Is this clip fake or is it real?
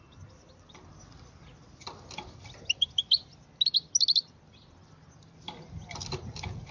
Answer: real